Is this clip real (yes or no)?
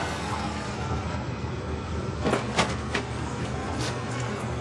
no